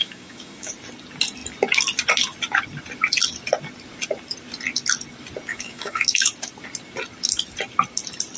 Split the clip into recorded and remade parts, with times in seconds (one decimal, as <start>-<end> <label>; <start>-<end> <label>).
0.0-0.7 remade; 0.7-5.5 recorded; 5.5-6.3 remade; 6.3-8.4 recorded